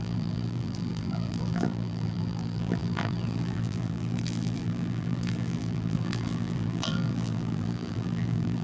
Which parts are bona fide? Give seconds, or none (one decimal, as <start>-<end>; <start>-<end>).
none